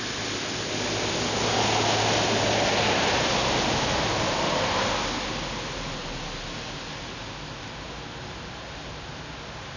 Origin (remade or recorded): recorded